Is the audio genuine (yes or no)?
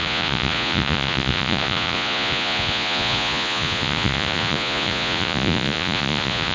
no